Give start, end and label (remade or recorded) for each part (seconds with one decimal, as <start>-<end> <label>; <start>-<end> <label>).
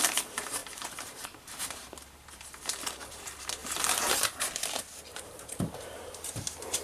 0.0-6.8 remade